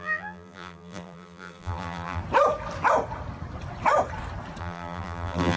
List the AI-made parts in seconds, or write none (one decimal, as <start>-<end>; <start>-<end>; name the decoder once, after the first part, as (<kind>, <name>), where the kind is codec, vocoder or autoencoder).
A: 0.0-2.2 (vocoder, BigVGAN v2); 4.6-5.6

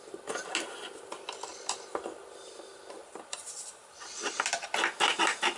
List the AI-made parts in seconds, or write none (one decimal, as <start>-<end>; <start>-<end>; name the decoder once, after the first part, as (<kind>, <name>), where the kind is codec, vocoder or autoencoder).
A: 1.5-2.2 (vocoder, BigVGAN v2); 3.0-4.1; 5.1-5.6

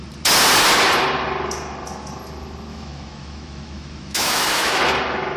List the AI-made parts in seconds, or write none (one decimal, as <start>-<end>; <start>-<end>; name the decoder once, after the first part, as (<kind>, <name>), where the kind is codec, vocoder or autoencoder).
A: 2.7-4.8 (autoencoder, DAC-VAE)

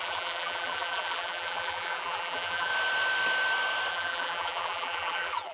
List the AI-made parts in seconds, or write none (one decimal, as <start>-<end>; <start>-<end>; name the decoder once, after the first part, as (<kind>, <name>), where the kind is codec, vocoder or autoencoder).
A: 0.0-2.7 (vocoder, BigVGAN v2); 3.9-5.5

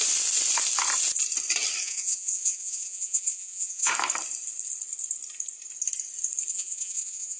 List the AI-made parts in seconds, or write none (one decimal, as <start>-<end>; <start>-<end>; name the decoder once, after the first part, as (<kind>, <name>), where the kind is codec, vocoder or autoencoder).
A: 1.8-3.9 (vocoder, Vocos); 6.5-7.4